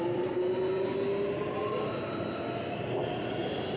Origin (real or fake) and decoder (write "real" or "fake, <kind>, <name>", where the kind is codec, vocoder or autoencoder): real